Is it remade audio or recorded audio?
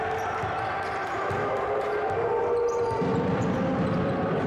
recorded